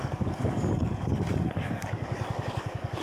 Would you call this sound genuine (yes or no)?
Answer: no